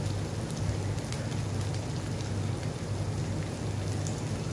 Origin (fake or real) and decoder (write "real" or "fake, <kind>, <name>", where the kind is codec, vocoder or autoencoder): real